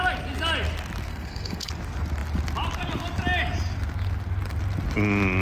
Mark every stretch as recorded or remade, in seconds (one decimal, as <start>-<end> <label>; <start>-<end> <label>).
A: 0.0-1.1 recorded; 1.1-1.7 remade; 1.7-5.4 recorded